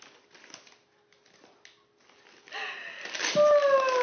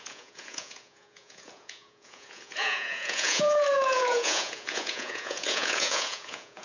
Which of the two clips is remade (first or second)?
second